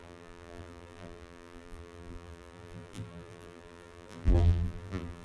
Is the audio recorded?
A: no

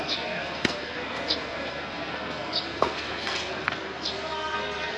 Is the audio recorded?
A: no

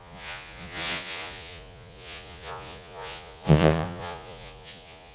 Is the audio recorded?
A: no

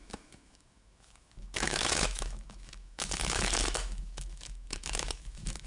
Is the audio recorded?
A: no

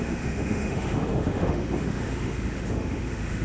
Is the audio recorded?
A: no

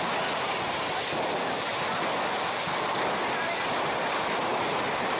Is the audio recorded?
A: yes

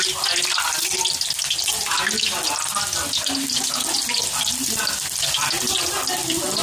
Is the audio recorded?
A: yes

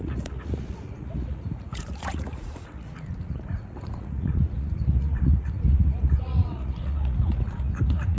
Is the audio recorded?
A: no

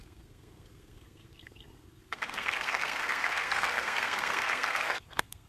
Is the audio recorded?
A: no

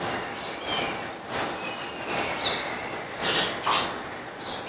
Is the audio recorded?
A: yes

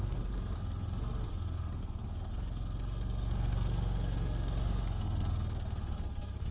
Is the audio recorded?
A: no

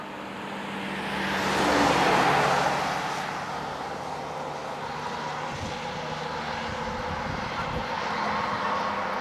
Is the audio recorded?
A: yes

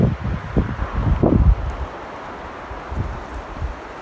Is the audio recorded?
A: yes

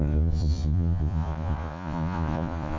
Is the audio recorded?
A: no